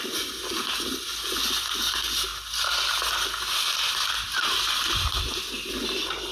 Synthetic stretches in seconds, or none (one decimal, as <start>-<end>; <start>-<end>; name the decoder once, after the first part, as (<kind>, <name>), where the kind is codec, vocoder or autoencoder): none